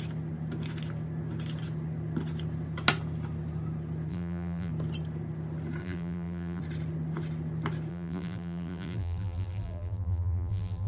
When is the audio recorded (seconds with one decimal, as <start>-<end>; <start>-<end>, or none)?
0.0-4.1; 4.7-5.8; 6.6-7.9